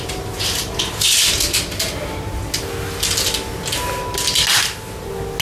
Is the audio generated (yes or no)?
no